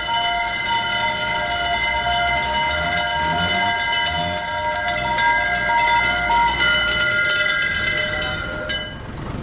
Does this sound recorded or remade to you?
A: recorded